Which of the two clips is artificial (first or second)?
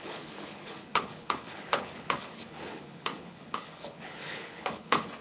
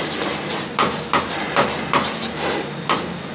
first